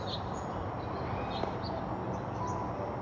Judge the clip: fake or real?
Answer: real